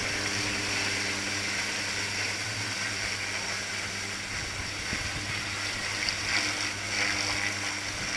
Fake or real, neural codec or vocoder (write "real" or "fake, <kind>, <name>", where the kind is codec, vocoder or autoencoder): real